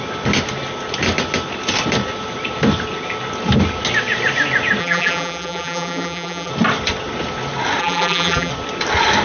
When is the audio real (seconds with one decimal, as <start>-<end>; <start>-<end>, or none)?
0.0-4.8; 6.5-7.8; 8.5-9.2